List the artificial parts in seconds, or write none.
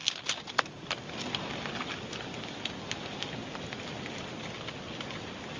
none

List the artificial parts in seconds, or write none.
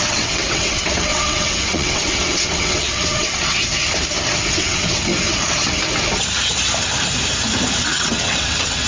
0.0-3.6 (vocoder, WaveNeXt); 4.5-5.1; 7.8-8.9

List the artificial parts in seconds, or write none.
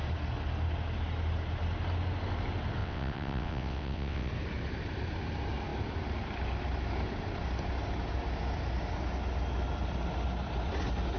2.8-4.3 (vocoder, WaveNeXt)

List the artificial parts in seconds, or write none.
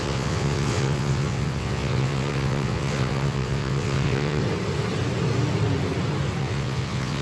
0.0-4.4 (vocoder, WaveNeXt); 6.4-7.2